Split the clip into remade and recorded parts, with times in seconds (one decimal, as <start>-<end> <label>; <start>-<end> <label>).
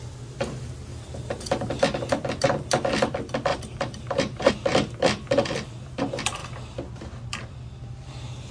0.0-0.9 recorded; 0.9-1.8 remade; 1.8-3.5 recorded; 3.5-4.5 remade; 4.5-8.5 recorded